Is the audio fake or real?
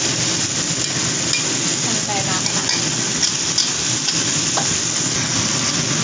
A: real